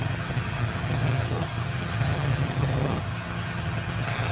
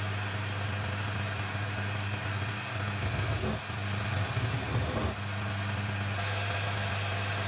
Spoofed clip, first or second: first